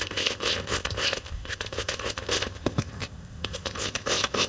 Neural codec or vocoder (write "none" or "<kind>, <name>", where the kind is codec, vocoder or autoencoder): codec, ZipCodec